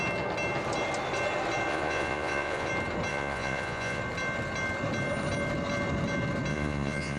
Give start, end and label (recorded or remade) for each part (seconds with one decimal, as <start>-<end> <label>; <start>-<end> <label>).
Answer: 0.0-1.7 recorded; 1.7-2.7 remade; 2.7-3.1 recorded; 3.1-4.0 remade; 4.0-6.5 recorded; 6.5-7.2 remade